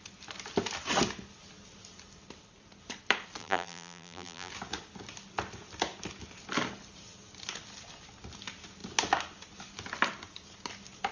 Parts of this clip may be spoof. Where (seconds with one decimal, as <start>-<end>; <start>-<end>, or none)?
3.4-4.5